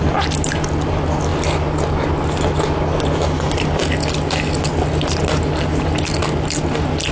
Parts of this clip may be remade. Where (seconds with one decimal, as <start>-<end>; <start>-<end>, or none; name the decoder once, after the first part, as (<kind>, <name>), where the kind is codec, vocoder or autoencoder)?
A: none